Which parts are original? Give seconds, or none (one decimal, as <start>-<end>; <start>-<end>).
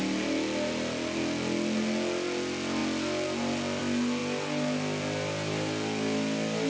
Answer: 0.0-6.7